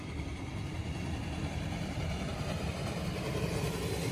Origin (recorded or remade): remade